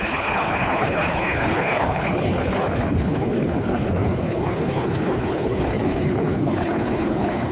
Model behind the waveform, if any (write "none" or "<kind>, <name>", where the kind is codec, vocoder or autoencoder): codec, HILCodec